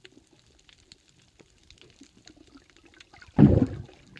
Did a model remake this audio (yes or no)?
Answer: no